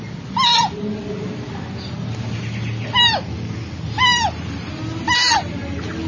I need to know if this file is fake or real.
real